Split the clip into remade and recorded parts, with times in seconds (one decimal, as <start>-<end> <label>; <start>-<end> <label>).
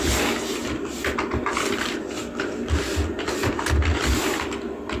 0.0-5.0 recorded